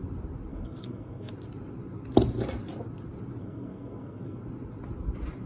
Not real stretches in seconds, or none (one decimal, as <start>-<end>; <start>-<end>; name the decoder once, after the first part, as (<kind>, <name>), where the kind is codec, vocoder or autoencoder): 0.5-1.3 (codec, SNAC); 3.4-4.4